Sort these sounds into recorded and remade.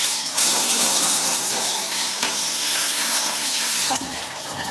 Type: remade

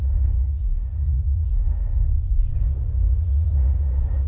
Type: remade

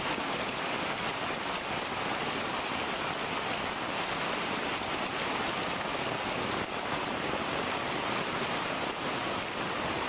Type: recorded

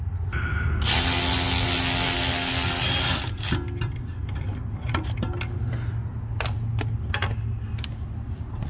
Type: recorded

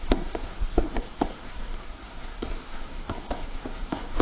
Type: remade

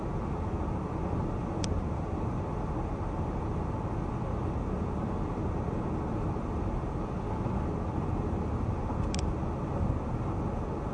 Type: recorded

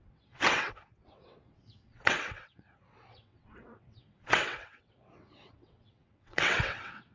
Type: remade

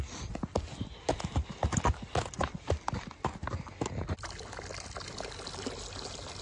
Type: recorded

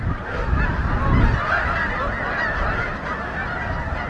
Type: recorded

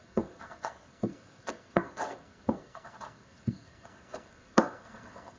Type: remade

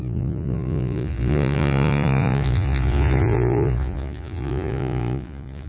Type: remade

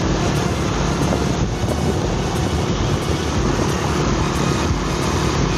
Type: recorded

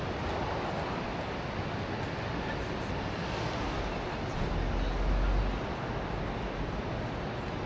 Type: recorded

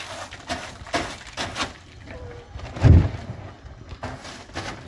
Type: recorded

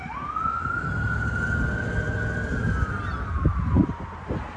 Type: recorded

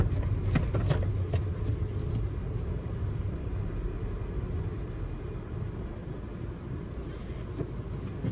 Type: recorded